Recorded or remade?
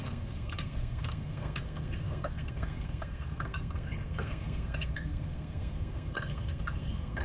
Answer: remade